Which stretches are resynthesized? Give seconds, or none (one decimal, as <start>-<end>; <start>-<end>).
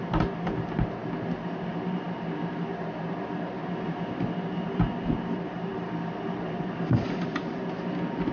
0.0-3.6; 4.1-8.3